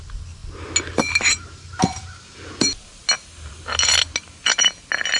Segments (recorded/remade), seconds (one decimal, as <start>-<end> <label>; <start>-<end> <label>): 0.0-5.2 recorded